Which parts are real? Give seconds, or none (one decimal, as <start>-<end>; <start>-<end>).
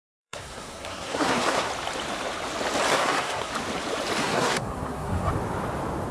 1.7-2.9; 3.5-4.2; 5.3-6.1